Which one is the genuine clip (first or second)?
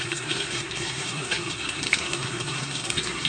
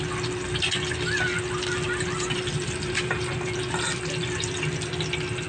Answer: second